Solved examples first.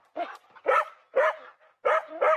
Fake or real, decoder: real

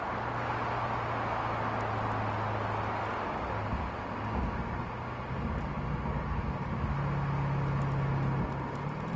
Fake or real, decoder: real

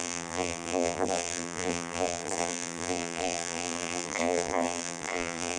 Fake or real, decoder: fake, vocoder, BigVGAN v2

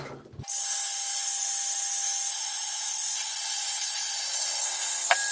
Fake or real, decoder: real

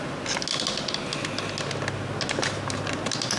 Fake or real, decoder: real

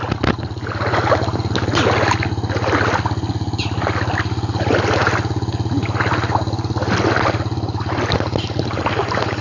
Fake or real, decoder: real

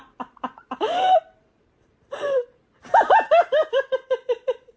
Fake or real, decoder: fake, vocoder, BigVGAN v2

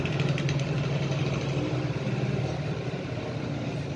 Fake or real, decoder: fake, vocoder, BigVGAN v2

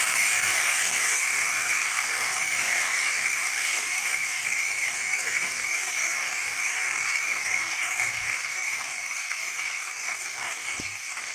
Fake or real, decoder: fake, codec, DAC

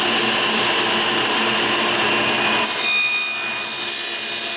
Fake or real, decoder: real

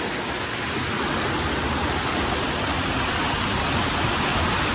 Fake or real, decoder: real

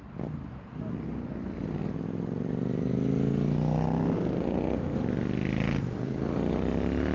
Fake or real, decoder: real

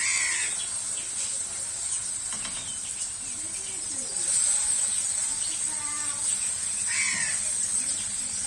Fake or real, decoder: real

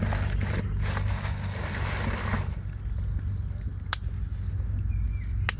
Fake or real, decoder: real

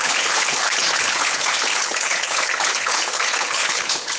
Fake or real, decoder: fake, codec, HILCodec